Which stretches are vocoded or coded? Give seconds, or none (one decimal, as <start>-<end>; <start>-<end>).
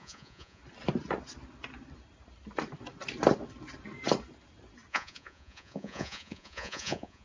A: 0.0-0.6; 4.9-7.2